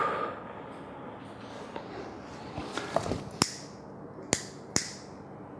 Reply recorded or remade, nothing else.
recorded